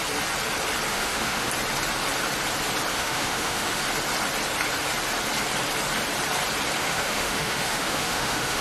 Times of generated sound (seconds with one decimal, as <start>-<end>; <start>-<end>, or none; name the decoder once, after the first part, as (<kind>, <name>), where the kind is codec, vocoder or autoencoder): 0.9-1.5 (autoencoder, DAC-VAE); 2.9-3.8; 6.8-8.6